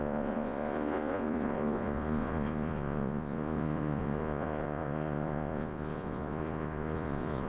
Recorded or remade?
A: remade